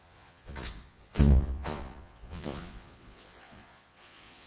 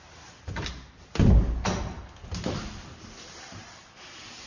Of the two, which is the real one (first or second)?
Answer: second